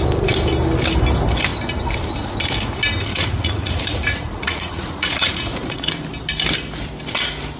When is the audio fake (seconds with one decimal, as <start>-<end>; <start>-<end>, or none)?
3.1-6.0